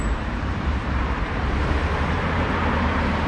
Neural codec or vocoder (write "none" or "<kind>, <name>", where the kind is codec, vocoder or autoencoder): vocoder, BigVGAN v2